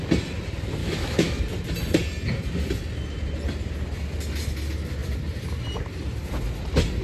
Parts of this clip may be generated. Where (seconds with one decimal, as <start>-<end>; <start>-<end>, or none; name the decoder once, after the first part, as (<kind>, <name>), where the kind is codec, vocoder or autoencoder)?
0.8-1.4 (autoencoder, DAC-VAE)